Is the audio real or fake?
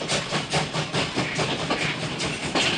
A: real